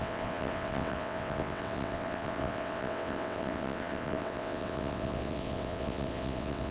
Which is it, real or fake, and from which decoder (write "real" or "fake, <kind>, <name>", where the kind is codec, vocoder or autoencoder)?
fake, vocoder, WaveNeXt